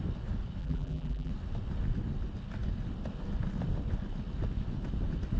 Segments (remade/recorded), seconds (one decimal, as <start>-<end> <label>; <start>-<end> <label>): 0.0-0.6 recorded; 0.6-1.3 remade; 1.3-5.4 recorded